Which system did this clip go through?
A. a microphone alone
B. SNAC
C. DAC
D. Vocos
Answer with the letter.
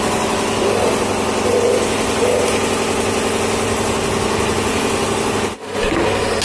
A